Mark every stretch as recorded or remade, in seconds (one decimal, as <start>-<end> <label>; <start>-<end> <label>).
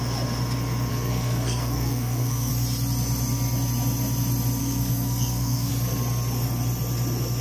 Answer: 0.0-0.9 recorded; 0.9-2.5 remade; 2.5-4.6 recorded; 4.6-5.7 remade; 5.7-7.4 recorded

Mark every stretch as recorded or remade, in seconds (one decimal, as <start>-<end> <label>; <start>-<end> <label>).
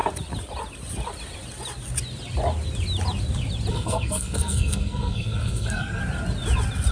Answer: 0.0-3.7 recorded; 3.7-6.0 remade; 6.0-6.9 recorded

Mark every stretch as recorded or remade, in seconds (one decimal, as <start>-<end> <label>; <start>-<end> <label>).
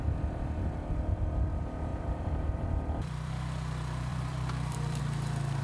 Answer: 0.0-1.9 recorded; 1.9-3.3 remade; 3.3-4.1 recorded; 4.1-5.0 remade; 5.0-5.6 recorded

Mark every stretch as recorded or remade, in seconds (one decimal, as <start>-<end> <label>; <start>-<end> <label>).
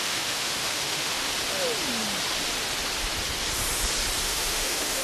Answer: 0.0-1.2 remade; 1.2-4.2 recorded; 4.2-5.0 remade